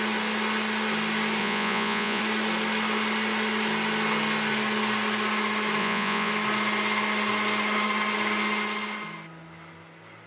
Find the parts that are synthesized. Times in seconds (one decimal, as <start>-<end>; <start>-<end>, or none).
1.4-2.2; 5.8-6.3